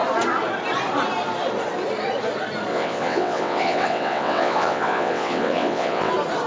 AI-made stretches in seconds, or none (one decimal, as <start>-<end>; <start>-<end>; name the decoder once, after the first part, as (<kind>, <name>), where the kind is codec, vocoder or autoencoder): 2.7-6.1 (vocoder, WaveNeXt)